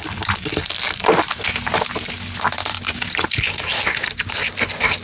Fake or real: real